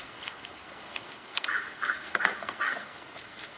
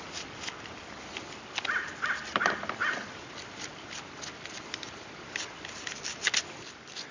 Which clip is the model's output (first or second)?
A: first